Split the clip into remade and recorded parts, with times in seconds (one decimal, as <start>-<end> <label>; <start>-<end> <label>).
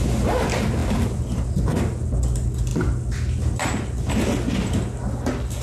0.0-5.6 recorded